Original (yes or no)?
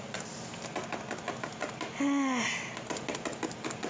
yes